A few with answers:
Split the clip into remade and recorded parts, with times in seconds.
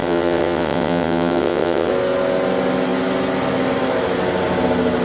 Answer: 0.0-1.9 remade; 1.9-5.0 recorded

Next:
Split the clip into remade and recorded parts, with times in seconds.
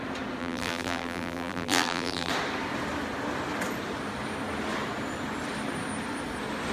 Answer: 0.0-0.4 recorded; 0.4-2.3 remade; 2.3-6.7 recorded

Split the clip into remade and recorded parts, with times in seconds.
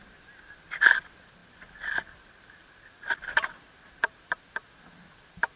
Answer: 0.0-5.6 remade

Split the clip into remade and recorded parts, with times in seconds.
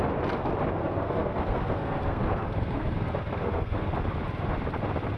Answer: 0.0-0.8 recorded; 0.8-3.9 remade; 3.9-5.2 recorded